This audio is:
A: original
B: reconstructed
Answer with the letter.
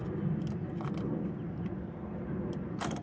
A